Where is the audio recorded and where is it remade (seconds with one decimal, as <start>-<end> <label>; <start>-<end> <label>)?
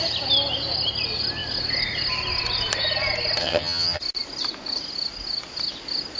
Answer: 0.0-3.4 recorded; 3.4-4.0 remade; 4.0-6.2 recorded